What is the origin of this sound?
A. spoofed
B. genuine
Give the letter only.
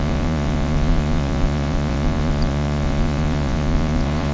A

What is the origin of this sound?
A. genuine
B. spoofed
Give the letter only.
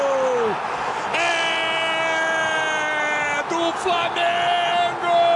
A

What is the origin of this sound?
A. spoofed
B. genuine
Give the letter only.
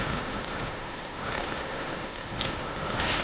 A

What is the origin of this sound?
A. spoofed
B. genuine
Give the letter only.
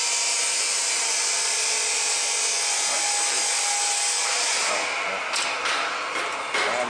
B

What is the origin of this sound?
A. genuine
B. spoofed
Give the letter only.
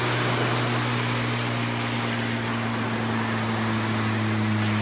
A